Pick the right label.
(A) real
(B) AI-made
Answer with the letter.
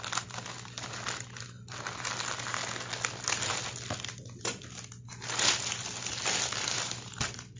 A